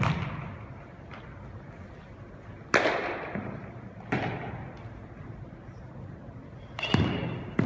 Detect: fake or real real